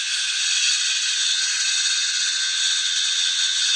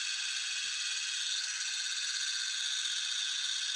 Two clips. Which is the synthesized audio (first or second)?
first